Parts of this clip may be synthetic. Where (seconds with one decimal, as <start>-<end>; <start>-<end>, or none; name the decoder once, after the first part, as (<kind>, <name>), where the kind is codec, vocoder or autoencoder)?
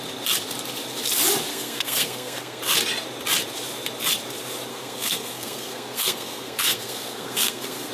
1.5-2.6 (codec, SNAC); 4.7-7.9